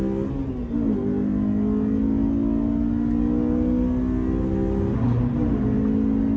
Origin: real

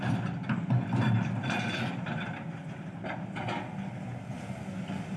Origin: real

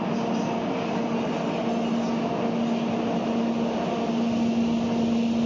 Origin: real